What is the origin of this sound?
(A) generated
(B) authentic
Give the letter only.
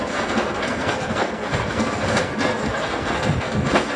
A